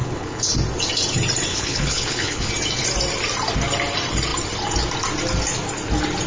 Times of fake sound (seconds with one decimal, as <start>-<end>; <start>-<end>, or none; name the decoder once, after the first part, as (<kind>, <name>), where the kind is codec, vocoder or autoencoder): 0.0-0.5 (codec, HILCodec); 1.5-2.5